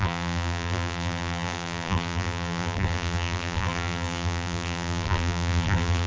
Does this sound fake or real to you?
fake